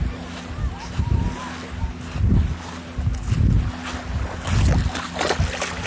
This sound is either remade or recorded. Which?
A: recorded